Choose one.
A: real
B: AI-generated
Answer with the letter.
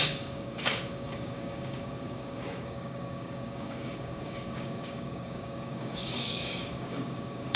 B